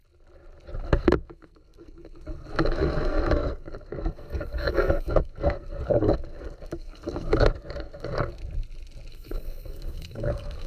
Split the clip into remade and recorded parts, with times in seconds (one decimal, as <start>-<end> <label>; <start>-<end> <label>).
0.0-0.8 recorded; 0.8-8.4 remade; 8.4-9.1 recorded; 9.1-10.7 remade